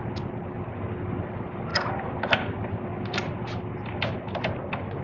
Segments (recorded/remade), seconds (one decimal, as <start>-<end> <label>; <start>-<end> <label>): 0.0-5.0 recorded